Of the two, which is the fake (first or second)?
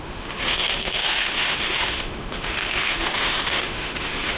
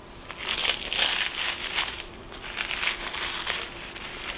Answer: first